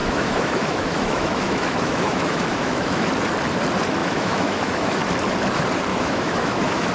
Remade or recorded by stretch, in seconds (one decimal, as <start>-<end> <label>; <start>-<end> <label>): 0.0-3.1 remade; 3.1-4.0 recorded; 4.0-5.0 remade; 5.0-5.9 recorded; 5.9-6.9 remade